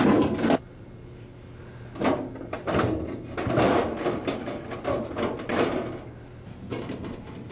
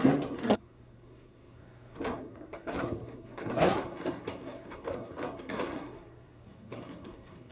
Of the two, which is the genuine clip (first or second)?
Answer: first